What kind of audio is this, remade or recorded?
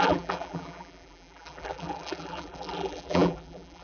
remade